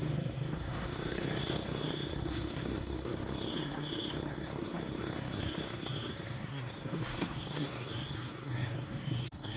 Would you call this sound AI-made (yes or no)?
yes